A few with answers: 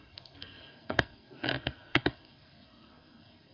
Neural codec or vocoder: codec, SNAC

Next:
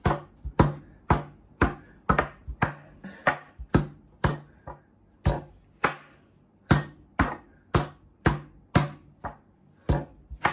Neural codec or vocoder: none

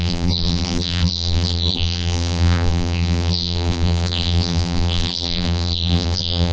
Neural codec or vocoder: vocoder, BigVGAN v2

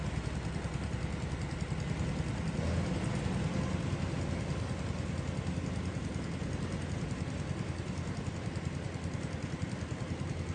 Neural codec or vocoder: none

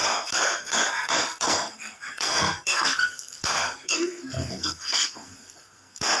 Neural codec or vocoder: codec, SNAC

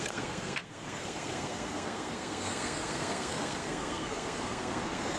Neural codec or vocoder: codec, SNAC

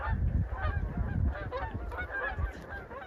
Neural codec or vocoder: none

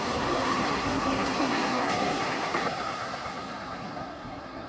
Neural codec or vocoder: codec, SNAC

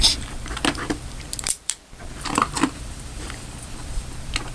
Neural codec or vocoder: vocoder, BigVGAN v2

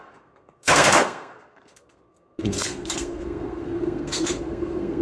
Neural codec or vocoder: codec, SNAC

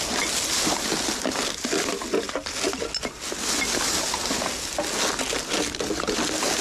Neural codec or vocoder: none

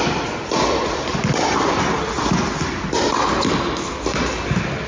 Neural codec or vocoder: none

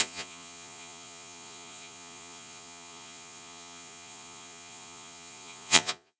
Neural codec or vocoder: vocoder, Vocos